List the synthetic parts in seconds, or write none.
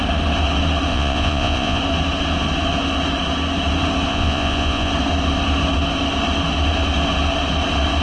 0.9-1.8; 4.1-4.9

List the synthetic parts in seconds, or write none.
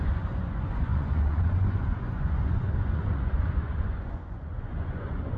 0.0-5.4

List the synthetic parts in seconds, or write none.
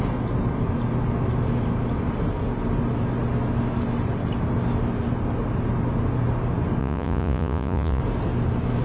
6.8-8.0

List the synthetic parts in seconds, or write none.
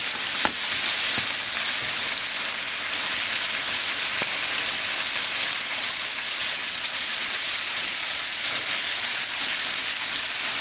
5.7-9.3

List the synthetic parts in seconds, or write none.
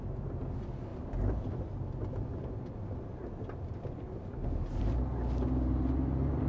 none